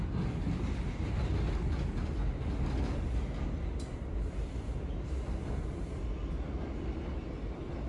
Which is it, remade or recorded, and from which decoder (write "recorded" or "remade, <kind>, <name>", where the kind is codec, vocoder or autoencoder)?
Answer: recorded